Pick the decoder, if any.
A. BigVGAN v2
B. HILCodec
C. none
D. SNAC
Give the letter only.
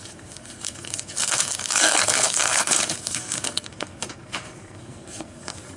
D